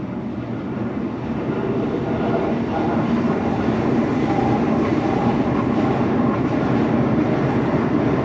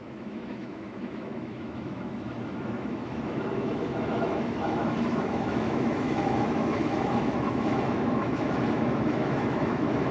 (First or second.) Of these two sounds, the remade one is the second